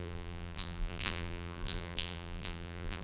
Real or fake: fake